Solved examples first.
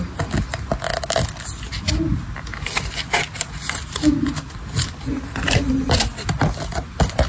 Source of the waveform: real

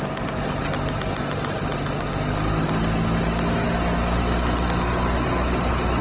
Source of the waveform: real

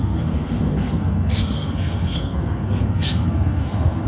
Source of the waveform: fake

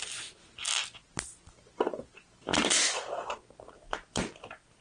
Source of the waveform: real